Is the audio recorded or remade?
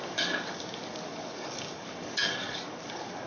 remade